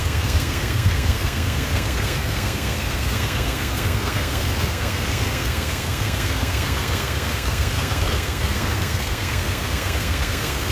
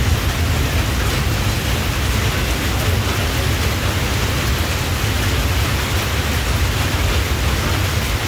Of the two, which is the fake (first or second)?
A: first